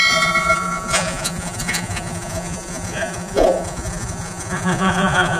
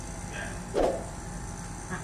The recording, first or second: second